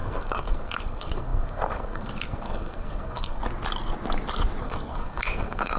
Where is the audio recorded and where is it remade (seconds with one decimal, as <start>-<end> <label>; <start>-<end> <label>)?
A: 0.0-3.4 remade; 3.4-4.6 recorded; 4.6-5.8 remade